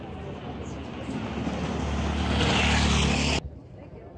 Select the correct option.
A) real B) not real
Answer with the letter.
A